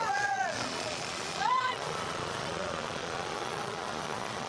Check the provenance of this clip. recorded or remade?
remade